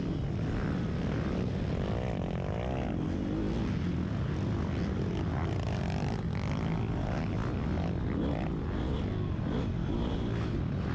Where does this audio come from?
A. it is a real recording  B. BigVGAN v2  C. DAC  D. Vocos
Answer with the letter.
A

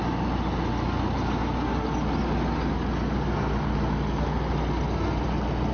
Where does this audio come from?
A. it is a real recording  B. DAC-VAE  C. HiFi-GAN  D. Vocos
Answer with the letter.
A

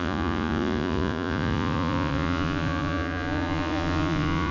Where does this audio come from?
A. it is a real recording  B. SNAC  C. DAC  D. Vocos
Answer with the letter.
D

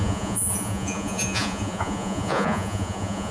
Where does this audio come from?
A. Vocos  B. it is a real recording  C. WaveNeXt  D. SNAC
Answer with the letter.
A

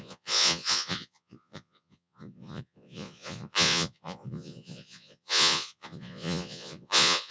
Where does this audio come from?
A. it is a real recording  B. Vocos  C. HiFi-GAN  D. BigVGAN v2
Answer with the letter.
B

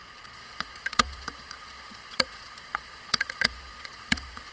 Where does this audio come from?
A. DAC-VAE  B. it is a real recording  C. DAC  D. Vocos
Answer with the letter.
D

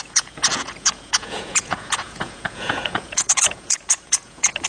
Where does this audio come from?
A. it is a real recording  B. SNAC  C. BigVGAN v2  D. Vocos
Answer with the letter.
D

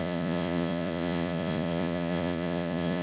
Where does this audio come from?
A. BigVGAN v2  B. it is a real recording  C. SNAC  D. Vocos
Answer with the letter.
D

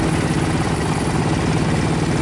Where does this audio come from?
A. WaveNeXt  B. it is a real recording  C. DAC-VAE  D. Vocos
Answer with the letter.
B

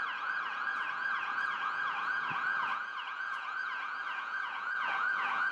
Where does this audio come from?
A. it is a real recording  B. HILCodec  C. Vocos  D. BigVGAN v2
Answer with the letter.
C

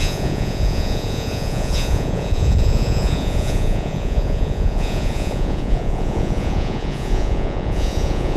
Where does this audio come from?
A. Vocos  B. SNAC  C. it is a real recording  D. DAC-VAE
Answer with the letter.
A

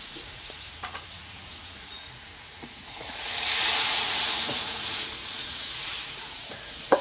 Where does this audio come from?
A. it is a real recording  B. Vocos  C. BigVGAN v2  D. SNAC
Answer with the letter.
B